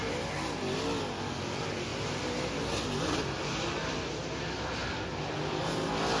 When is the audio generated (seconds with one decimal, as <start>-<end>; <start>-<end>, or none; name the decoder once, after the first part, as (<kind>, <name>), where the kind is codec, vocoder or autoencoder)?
none

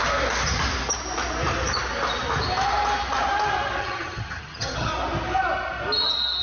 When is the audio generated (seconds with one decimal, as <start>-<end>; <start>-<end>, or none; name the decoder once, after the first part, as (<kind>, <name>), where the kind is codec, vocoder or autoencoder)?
3.8-4.9 (vocoder, HiFi-GAN)

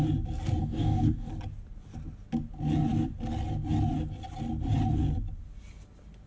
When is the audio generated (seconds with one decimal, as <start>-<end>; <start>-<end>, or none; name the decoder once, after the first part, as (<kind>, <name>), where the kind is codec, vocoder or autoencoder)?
0.6-1.3 (codec, DAC)

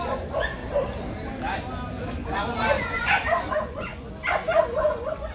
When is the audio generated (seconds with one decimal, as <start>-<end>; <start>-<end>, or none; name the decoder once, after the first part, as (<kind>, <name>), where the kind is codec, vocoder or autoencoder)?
0.0-0.6 (vocoder, Vocos); 2.8-3.9; 4.6-5.3

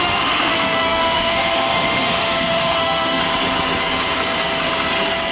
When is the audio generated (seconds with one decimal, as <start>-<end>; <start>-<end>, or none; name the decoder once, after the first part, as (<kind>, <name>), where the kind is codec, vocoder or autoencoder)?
0.0-3.2 (autoencoder, DAC-VAE)

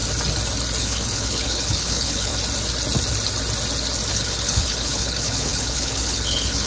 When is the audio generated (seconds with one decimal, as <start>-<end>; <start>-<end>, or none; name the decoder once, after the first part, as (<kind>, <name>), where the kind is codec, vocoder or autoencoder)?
0.8-2.3 (codec, HILCodec); 4.1-6.7